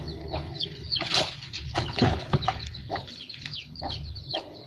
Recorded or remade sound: remade